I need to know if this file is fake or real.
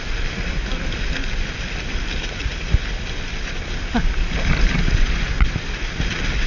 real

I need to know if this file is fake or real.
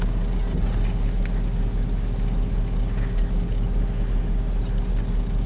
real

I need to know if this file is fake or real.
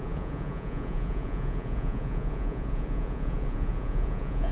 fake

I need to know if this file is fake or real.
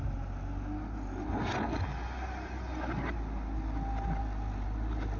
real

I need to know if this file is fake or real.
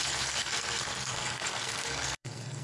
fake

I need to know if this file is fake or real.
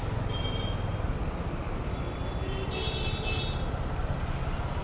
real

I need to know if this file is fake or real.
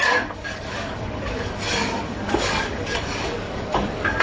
fake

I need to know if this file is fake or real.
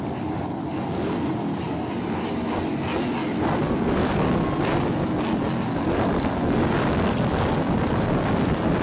real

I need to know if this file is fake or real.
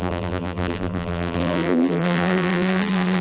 fake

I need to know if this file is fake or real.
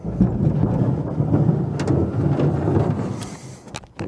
real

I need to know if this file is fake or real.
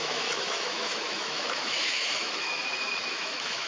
fake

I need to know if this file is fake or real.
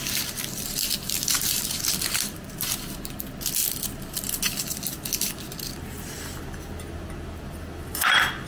real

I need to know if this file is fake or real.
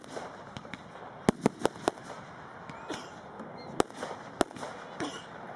real